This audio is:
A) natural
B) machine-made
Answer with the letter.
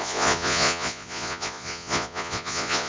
B